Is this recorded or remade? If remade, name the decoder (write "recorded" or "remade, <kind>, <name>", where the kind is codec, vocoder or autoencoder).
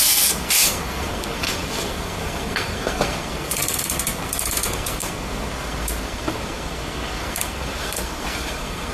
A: remade, codec, SNAC